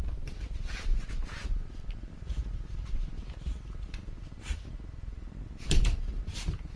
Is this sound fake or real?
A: fake